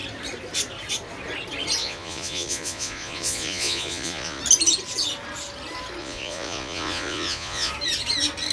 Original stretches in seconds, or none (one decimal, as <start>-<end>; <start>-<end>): 0.0-1.8; 4.4-6.0; 7.7-8.5